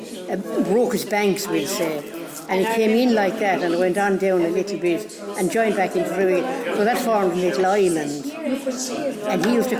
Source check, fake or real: real